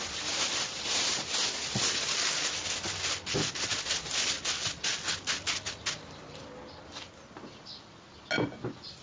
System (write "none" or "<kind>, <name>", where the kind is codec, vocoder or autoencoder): none